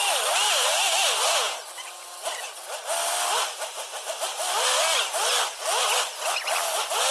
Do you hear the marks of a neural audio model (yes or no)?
no